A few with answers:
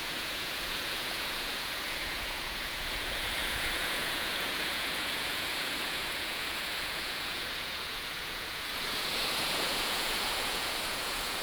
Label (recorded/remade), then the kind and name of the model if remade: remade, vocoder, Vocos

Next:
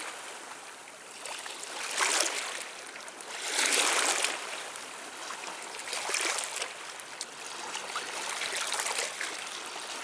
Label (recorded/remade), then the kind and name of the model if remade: recorded